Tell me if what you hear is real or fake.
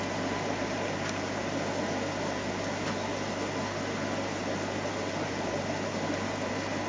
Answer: real